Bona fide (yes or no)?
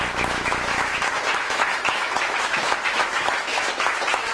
no